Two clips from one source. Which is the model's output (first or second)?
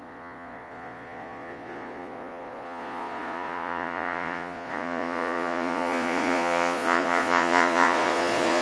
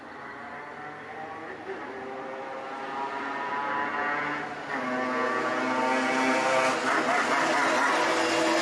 first